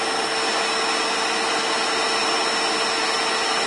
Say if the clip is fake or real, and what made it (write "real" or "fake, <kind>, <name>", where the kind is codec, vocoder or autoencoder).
real